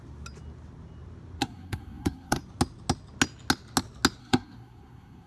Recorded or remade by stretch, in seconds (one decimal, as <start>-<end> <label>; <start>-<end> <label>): 0.0-1.4 recorded; 1.4-2.4 remade; 2.4-4.2 recorded; 4.2-5.3 remade